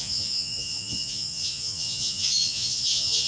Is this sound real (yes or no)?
no